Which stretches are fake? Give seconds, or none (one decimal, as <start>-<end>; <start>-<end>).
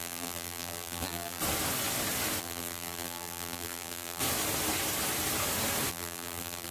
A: 0.0-1.4; 2.4-4.2; 5.9-6.7